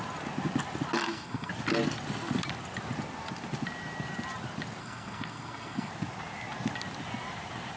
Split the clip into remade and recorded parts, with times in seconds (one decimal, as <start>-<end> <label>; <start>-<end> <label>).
0.0-1.0 recorded; 1.0-1.5 remade; 1.5-4.8 recorded; 4.8-5.9 remade; 5.9-7.8 recorded